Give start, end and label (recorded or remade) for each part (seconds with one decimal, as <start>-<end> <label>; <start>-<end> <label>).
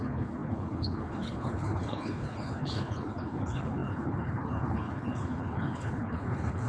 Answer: 0.0-6.7 remade